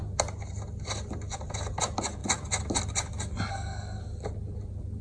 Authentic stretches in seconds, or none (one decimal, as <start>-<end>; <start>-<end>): 0.0-3.5; 4.0-5.0